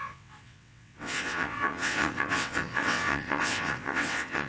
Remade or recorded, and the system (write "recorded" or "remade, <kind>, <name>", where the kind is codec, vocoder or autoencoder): remade, vocoder, WaveNeXt